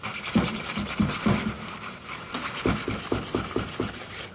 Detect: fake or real real